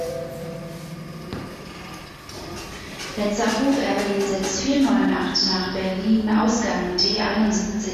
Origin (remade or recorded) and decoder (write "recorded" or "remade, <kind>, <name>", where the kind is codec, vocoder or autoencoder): recorded